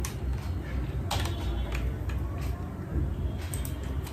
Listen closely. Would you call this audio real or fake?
real